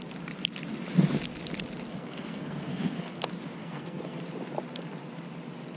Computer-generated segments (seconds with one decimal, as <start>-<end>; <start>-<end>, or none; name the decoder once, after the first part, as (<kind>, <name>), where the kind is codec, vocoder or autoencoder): 1.9-3.2 (codec, SNAC); 3.6-4.2